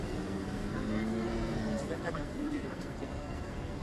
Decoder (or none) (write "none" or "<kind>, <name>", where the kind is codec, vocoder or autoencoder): codec, SNAC